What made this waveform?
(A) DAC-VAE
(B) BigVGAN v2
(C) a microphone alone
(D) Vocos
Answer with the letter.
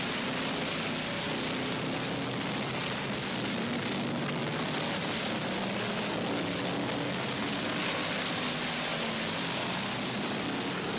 C